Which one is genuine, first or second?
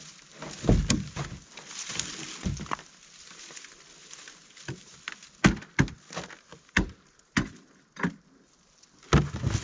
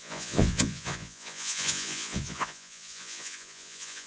first